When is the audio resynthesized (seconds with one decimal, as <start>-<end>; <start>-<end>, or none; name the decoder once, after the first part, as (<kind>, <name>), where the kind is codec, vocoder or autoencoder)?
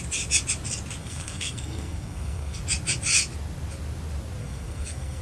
1.0-2.6 (codec, SNAC); 4.4-5.2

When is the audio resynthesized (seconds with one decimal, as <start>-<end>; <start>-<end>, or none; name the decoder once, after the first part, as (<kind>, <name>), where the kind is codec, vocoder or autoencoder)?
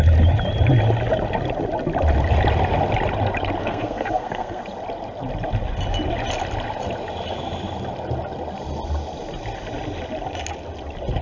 3.6-4.6 (codec, SNAC)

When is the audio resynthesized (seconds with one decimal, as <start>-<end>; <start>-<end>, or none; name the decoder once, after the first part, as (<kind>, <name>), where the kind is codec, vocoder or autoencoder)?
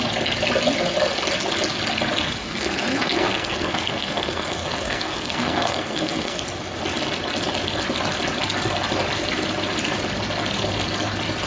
2.4-6.4 (codec, SNAC)